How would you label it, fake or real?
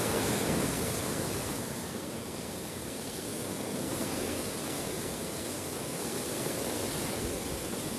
fake